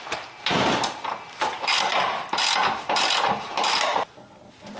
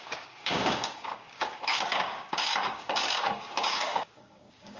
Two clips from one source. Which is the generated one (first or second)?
second